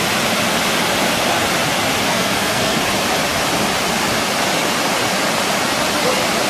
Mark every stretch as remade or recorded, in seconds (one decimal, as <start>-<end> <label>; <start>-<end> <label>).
0.0-2.1 recorded; 2.1-2.8 remade; 2.8-6.5 recorded